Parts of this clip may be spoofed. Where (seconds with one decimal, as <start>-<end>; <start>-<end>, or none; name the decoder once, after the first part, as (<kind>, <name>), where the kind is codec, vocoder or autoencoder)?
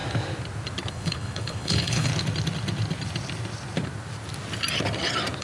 0.9-2.1 (codec, HILCodec)